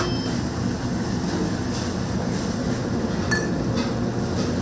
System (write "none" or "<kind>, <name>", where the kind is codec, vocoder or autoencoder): none